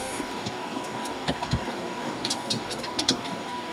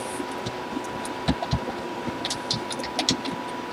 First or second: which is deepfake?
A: first